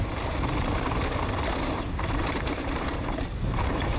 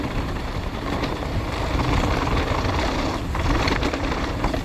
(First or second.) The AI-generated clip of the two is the first